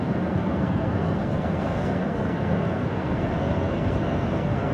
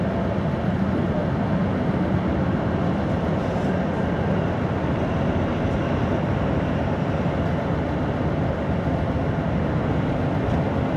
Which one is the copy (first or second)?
first